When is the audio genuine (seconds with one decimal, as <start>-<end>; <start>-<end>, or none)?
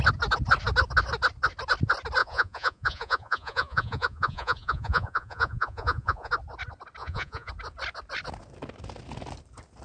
0.0-2.2; 6.3-7.0; 7.5-9.8